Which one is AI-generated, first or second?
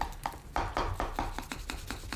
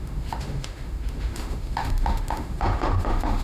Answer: second